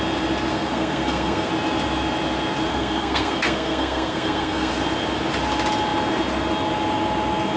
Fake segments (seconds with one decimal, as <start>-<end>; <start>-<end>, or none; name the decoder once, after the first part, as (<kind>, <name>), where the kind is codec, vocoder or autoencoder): 0.5-1.5 (codec, SNAC); 2.7-4.7